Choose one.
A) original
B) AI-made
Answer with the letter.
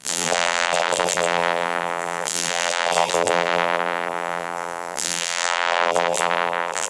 B